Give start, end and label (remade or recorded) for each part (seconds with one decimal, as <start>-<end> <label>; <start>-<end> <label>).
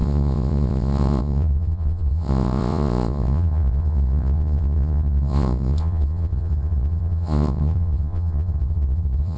0.0-9.4 remade